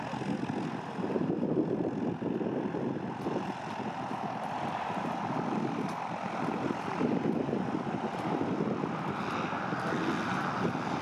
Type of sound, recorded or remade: recorded